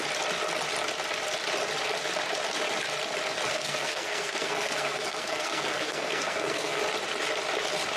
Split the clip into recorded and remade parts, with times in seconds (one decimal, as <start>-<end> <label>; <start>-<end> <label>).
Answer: 0.0-3.5 recorded; 3.5-6.8 remade; 6.8-8.0 recorded